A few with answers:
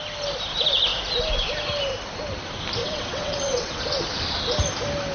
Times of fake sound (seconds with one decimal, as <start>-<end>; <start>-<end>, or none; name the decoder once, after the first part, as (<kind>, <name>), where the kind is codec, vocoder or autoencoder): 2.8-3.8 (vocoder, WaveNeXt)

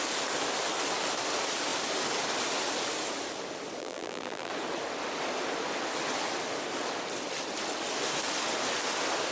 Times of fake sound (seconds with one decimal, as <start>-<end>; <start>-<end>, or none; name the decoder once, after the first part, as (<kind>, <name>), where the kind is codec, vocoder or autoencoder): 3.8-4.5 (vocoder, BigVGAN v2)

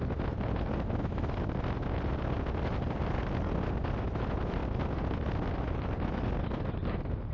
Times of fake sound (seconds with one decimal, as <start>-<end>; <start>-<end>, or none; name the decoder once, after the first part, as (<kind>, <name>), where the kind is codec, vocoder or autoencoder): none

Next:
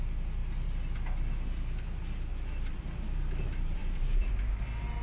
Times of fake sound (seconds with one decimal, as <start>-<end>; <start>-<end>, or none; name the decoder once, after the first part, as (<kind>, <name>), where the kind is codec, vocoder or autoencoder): 2.3-4.5 (vocoder, BigVGAN v2)